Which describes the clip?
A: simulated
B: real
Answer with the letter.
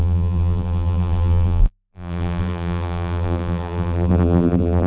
A